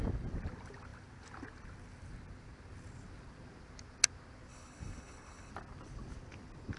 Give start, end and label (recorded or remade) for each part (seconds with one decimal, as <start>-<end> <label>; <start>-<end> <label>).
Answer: 0.0-4.5 recorded; 4.5-5.5 remade; 5.5-6.8 recorded